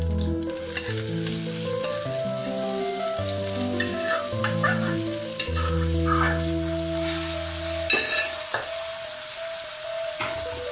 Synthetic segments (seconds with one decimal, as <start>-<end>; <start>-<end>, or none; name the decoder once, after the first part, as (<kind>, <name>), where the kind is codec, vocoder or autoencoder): none